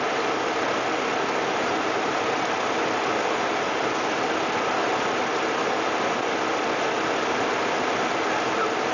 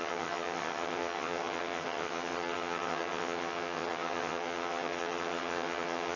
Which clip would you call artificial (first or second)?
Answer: second